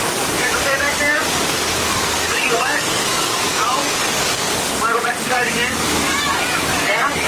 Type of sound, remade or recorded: remade